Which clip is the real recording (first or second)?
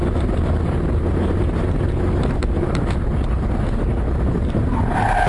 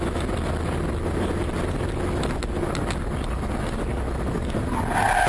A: second